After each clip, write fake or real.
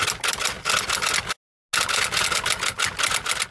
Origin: real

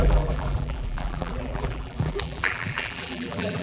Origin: fake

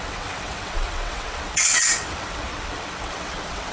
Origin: fake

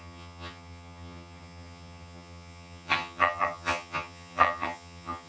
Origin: fake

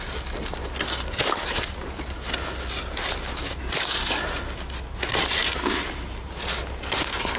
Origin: real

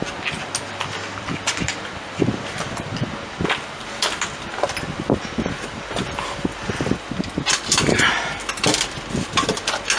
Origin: real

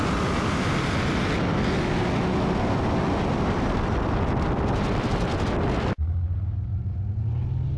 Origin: real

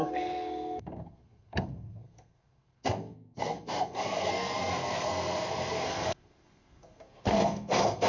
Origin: fake